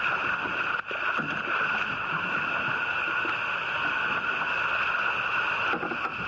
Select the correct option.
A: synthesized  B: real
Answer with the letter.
B